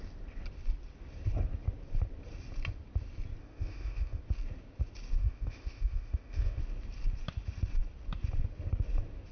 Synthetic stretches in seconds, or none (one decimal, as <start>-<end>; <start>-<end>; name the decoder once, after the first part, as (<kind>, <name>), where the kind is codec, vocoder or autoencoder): 3.4-4.2 (codec, ZipCodec); 5.2-6.6